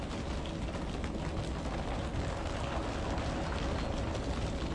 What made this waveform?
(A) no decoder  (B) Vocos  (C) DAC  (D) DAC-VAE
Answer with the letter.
A